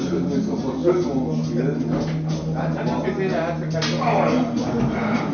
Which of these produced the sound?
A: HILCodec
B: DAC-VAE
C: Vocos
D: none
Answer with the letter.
D